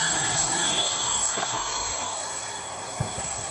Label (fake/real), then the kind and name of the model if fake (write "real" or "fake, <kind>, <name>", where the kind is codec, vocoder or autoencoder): fake, codec, SNAC